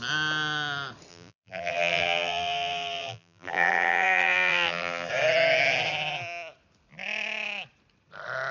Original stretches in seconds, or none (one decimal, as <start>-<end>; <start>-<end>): 0.0-1.1; 5.1-8.5